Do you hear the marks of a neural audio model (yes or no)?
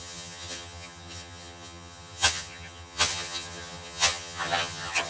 yes